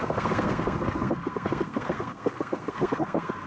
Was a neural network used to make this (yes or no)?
yes